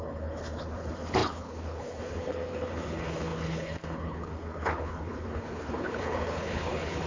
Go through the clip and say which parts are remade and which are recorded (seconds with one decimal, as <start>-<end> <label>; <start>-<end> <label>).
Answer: 0.0-7.1 remade